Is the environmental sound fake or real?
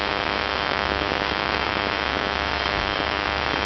fake